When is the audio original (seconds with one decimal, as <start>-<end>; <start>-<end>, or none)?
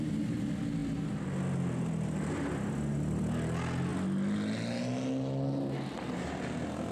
0.0-6.9